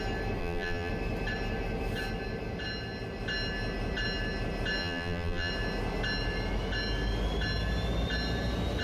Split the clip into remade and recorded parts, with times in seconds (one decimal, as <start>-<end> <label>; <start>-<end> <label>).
0.0-0.4 recorded; 0.4-0.9 remade; 0.9-4.8 recorded; 4.8-5.5 remade; 5.5-8.8 recorded